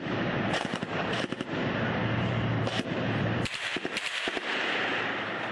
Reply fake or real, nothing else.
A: fake